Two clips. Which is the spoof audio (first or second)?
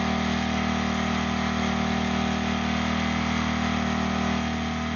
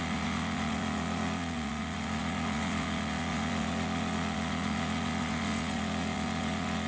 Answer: second